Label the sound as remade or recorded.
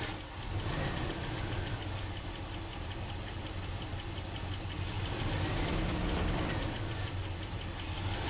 recorded